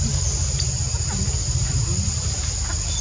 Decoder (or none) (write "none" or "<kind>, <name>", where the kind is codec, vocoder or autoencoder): none